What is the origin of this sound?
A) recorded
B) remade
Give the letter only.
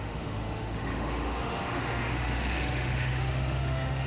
B